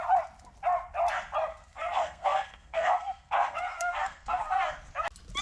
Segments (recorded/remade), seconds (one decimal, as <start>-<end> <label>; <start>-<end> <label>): 0.0-1.5 recorded; 1.5-4.7 remade; 4.7-5.4 recorded